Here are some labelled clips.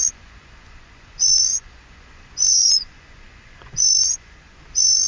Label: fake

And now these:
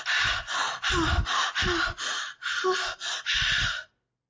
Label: real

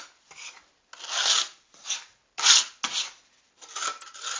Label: real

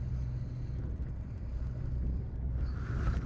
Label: real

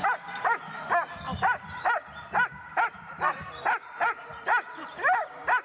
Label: real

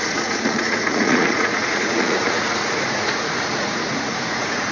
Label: fake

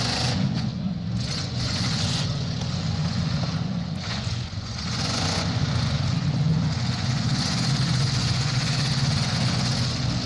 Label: fake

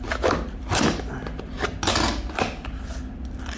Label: real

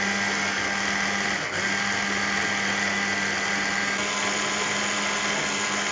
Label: real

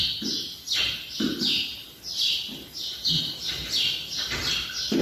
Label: real